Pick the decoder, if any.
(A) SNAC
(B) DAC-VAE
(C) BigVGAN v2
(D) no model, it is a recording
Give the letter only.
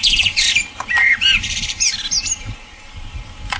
C